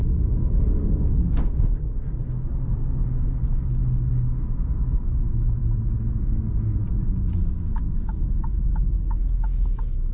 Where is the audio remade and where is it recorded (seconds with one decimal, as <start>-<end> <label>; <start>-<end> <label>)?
0.0-10.1 recorded

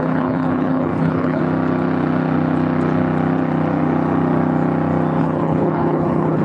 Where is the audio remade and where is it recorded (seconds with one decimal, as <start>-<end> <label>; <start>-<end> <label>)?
0.0-1.4 remade; 1.4-5.2 recorded; 5.2-6.4 remade

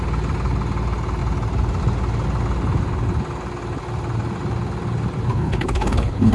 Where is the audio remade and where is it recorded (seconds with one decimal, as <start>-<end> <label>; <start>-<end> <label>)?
0.0-5.3 recorded; 5.3-6.3 remade

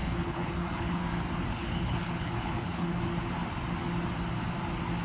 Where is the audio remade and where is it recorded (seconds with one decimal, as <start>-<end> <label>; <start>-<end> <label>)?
0.0-1.0 remade; 1.0-1.5 recorded; 1.5-3.0 remade; 3.0-5.0 recorded

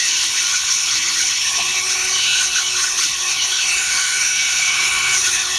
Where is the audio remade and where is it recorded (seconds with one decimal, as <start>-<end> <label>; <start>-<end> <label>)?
0.0-5.6 remade

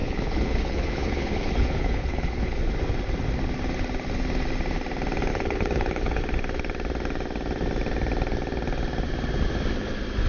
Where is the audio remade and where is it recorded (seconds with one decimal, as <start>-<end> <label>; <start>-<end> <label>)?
0.0-2.7 remade; 2.7-5.3 recorded; 5.3-6.2 remade; 6.2-10.3 recorded

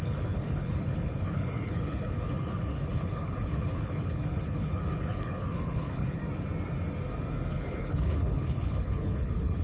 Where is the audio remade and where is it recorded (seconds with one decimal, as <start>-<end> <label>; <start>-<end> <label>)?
0.0-6.2 remade; 6.2-7.5 recorded; 7.5-9.6 remade

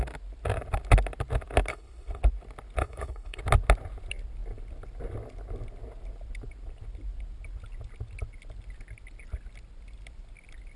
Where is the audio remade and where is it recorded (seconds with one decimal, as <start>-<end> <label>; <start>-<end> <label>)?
0.0-1.7 recorded; 1.7-2.2 remade; 2.2-2.8 recorded; 2.8-3.4 remade; 3.4-10.8 recorded